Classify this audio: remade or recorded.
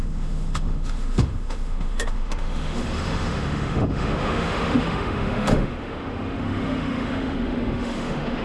remade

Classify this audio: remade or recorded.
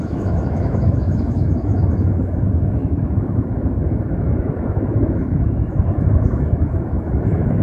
remade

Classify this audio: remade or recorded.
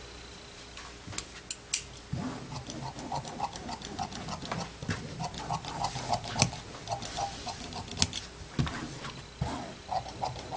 recorded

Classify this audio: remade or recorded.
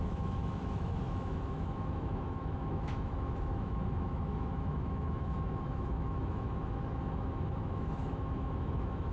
remade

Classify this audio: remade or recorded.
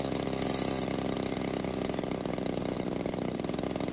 recorded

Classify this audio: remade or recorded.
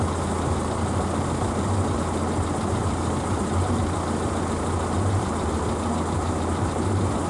recorded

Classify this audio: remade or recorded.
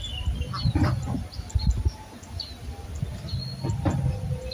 recorded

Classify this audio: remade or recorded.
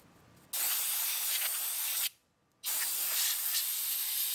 recorded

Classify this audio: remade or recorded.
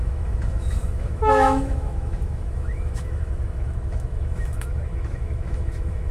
remade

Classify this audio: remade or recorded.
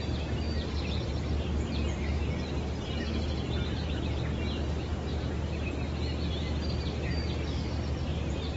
recorded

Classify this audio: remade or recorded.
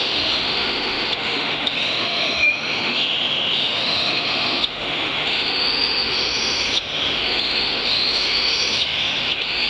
remade